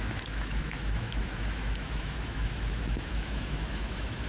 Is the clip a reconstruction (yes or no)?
yes